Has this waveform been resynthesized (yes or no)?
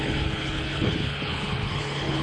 yes